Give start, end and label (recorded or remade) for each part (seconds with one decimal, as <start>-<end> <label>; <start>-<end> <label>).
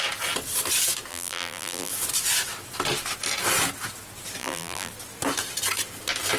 0.0-1.1 recorded; 1.1-1.9 remade; 1.9-4.4 recorded; 4.4-4.9 remade; 4.9-6.4 recorded